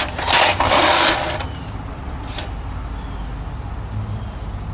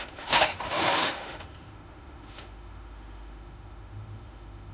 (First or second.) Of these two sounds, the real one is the first